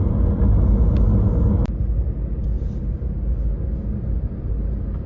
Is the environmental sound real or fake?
real